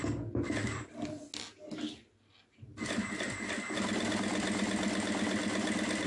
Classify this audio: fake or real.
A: real